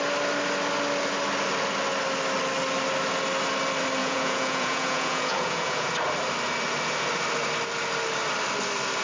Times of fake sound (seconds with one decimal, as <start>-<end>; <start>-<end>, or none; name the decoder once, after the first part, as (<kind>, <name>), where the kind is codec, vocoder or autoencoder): 4.0-5.9 (vocoder, Vocos)